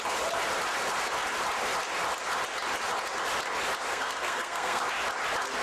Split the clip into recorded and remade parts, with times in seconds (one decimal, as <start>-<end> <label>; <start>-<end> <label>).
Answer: 0.0-3.9 recorded; 3.9-4.8 remade; 4.8-5.6 recorded